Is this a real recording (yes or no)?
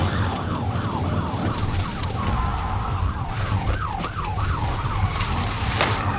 no